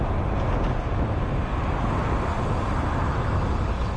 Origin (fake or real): real